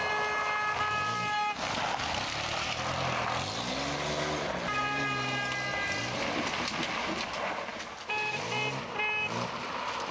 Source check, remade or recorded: recorded